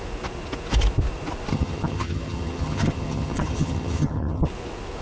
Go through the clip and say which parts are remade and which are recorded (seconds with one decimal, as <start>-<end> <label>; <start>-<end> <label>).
0.0-1.5 recorded; 1.5-4.5 remade; 4.5-5.0 recorded